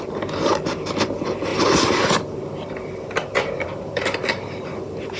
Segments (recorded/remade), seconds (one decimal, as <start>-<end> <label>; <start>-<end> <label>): 0.0-5.2 recorded